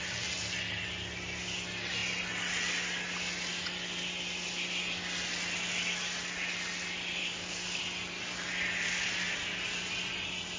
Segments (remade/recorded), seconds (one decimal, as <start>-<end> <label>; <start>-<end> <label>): 0.0-7.2 recorded; 7.2-7.8 remade; 7.8-10.6 recorded